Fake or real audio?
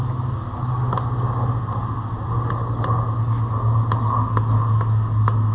real